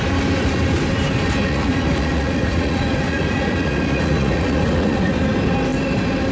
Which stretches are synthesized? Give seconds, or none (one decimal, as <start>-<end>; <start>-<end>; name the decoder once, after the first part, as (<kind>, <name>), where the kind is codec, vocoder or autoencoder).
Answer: 1.4-5.2 (vocoder, Vocos)